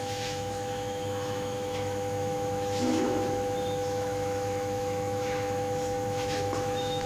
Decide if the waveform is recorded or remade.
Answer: remade